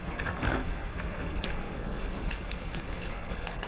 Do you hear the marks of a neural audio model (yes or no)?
yes